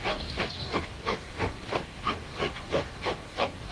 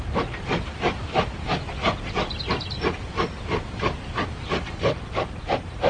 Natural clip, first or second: second